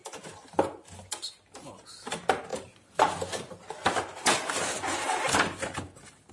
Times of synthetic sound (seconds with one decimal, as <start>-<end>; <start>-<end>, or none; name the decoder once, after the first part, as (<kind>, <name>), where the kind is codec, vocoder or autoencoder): none